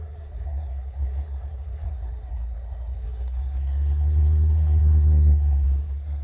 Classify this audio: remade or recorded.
remade